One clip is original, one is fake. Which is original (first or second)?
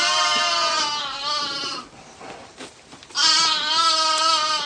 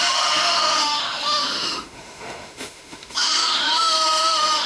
first